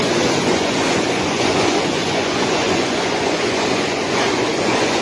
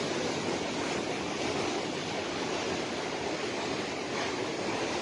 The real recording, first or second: second